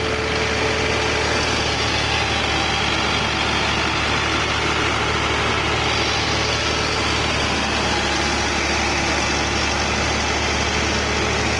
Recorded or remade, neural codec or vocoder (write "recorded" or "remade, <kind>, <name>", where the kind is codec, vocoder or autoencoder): recorded